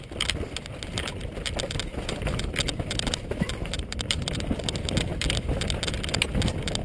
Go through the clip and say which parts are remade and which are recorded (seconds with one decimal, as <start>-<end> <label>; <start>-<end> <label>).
0.0-1.2 recorded; 1.2-4.6 remade; 4.6-5.1 recorded; 5.1-6.2 remade; 6.2-6.8 recorded